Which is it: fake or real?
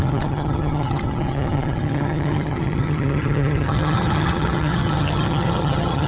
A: fake